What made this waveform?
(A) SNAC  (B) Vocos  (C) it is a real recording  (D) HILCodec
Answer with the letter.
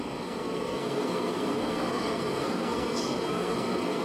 A